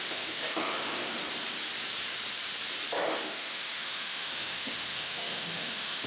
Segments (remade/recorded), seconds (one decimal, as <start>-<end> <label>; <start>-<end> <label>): 0.0-1.2 remade; 1.2-3.0 recorded; 3.0-6.1 remade